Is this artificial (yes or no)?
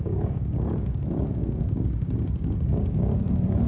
yes